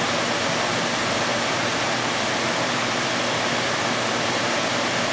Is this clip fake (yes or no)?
no